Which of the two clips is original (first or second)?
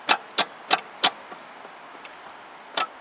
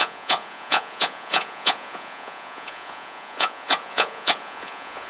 first